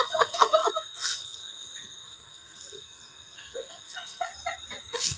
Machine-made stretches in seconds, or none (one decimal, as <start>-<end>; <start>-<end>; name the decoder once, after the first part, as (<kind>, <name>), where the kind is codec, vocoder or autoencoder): 0.0-4.3 (codec, SNAC); 4.8-5.2